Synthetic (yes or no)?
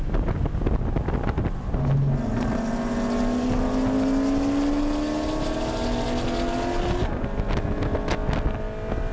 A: no